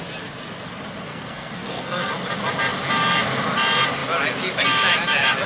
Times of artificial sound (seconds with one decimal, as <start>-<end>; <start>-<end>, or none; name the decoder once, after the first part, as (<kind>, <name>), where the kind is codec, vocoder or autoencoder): 1.1-2.1 (codec, SNAC)